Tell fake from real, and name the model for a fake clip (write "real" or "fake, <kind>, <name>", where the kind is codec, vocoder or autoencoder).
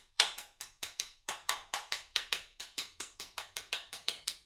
fake, codec, SNAC